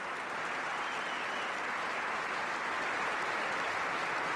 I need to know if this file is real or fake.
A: real